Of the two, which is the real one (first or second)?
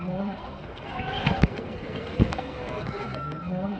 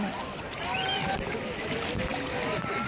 second